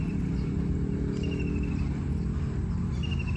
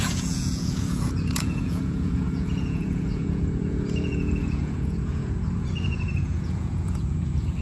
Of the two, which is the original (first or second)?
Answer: first